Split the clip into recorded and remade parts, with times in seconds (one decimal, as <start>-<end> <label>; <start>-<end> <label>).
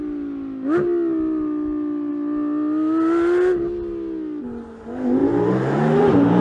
0.0-5.2 recorded; 5.2-6.4 remade